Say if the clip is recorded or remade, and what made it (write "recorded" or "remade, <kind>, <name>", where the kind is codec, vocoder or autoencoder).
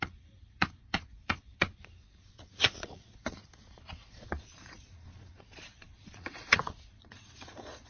remade, vocoder, Vocos